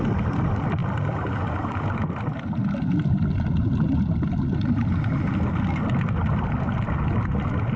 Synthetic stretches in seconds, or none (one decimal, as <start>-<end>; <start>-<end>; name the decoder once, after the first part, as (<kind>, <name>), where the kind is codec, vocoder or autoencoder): none